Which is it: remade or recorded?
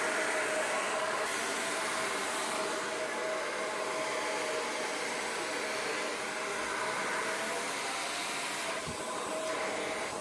recorded